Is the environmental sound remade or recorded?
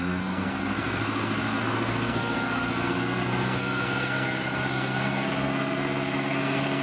remade